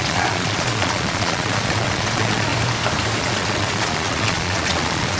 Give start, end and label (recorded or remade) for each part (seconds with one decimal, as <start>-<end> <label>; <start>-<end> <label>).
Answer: 0.0-2.5 remade; 2.5-3.2 recorded; 3.2-5.2 remade